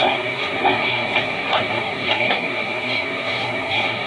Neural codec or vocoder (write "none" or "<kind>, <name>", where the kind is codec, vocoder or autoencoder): codec, SNAC